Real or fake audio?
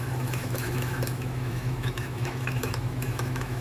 fake